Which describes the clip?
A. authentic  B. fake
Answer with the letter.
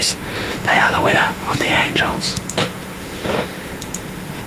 B